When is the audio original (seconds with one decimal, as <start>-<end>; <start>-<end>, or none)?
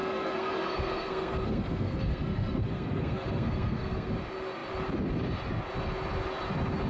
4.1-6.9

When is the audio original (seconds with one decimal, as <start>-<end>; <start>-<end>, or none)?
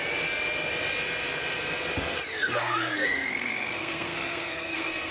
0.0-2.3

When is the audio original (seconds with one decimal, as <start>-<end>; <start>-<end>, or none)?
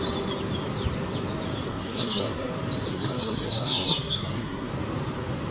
0.0-1.7; 2.5-2.9; 4.7-5.5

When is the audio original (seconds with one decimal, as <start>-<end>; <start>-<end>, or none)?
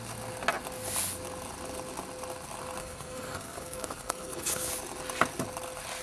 0.0-2.8; 4.7-6.0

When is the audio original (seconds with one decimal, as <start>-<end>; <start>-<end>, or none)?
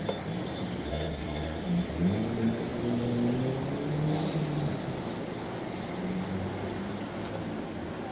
0.0-0.9; 1.6-8.1